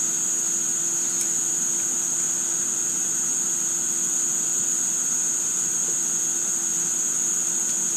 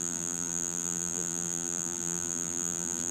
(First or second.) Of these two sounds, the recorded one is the first